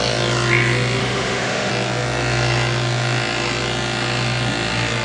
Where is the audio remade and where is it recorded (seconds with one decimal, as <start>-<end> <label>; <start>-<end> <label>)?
0.0-1.0 recorded; 1.0-1.7 remade; 1.7-5.0 recorded